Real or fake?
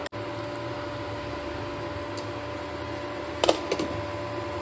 real